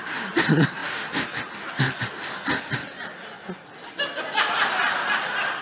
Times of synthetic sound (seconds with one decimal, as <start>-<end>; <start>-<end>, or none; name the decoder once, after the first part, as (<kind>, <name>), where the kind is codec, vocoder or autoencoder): none